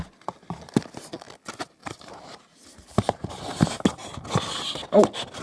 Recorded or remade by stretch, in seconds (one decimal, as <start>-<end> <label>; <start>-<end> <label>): 0.0-1.8 recorded; 1.8-3.5 remade; 3.5-5.4 recorded